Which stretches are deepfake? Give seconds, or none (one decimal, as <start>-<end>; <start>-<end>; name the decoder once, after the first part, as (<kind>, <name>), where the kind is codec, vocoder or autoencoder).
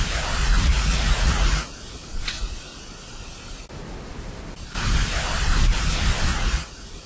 0.4-2.8 (vocoder, Vocos); 6.3-7.1